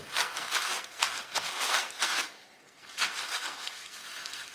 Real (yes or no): no